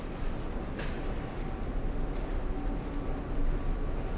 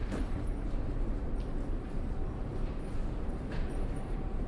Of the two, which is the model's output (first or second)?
second